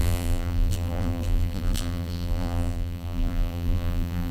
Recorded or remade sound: remade